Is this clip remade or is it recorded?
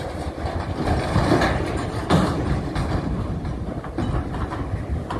recorded